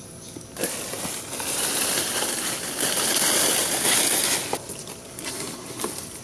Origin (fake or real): real